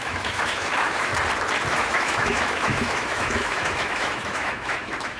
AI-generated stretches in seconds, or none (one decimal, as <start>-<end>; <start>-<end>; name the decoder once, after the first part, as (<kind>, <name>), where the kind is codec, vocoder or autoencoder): 0.0-1.1 (autoencoder, DAC-VAE); 1.7-5.2